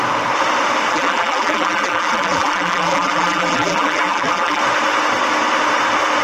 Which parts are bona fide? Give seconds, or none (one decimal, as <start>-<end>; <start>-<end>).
0.0-0.9; 4.6-6.2